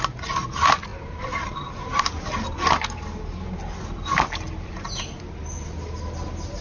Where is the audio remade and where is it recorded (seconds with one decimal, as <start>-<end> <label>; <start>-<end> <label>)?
0.0-0.9 recorded; 0.9-2.0 remade; 2.0-6.6 recorded